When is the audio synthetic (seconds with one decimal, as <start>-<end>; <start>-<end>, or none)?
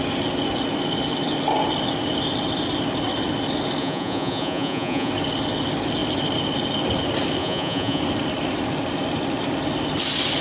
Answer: 3.8-5.1; 7.4-8.0